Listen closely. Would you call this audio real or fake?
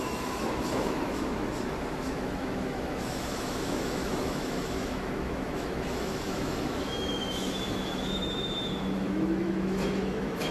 fake